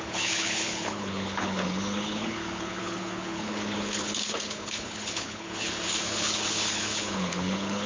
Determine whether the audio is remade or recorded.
remade